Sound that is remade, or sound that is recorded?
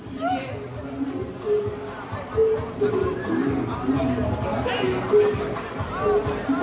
recorded